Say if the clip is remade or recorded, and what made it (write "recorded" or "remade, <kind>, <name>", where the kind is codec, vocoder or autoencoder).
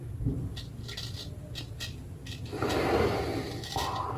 recorded